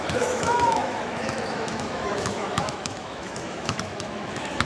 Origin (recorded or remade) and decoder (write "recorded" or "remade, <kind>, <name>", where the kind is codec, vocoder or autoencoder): remade, autoencoder, DAC-VAE